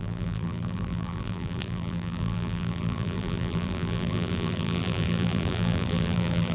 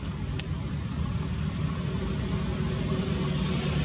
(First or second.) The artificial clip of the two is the first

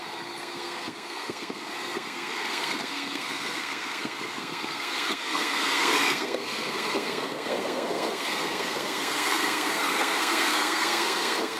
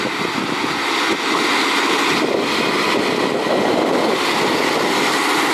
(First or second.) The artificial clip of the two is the first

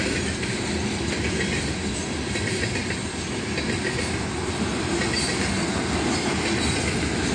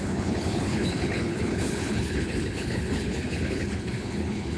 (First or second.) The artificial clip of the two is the second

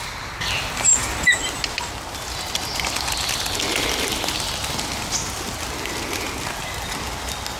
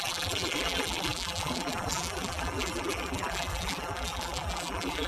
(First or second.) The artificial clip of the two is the second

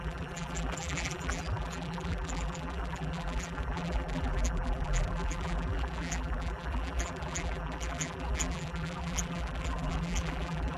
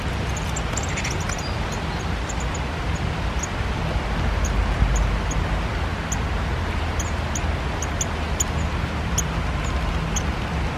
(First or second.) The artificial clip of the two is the first